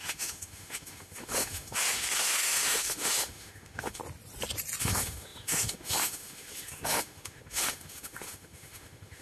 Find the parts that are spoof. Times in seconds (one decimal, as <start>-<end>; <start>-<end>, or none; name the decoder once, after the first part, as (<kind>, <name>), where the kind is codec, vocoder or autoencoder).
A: 0.0-4.0 (autoencoder, DAC-VAE); 4.8-9.2